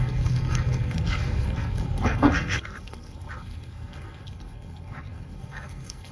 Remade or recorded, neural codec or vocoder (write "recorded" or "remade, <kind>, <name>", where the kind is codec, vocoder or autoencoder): remade, codec, SNAC